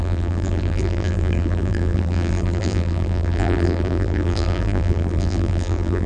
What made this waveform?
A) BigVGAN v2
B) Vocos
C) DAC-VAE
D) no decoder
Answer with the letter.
A